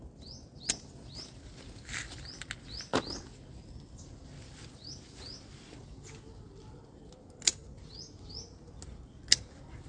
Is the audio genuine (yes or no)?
yes